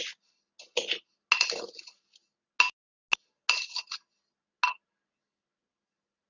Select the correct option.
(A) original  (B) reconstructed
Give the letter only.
A